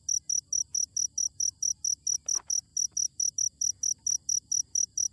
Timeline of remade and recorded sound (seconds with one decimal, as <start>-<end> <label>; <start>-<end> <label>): 0.0-5.1 recorded